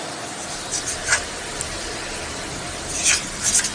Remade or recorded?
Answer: recorded